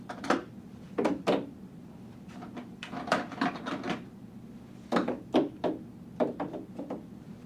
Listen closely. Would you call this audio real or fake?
fake